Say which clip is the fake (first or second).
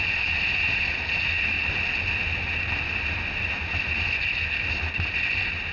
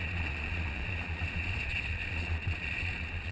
second